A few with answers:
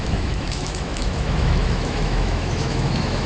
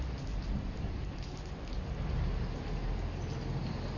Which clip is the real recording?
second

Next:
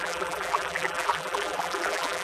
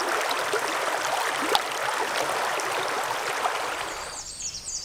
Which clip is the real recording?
second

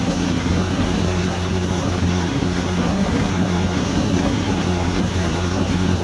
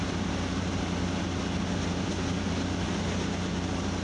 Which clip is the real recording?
second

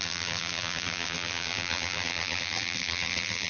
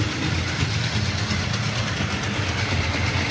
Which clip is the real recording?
second